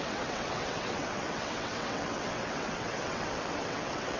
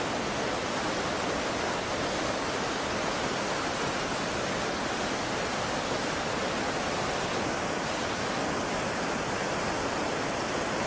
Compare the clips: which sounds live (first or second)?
second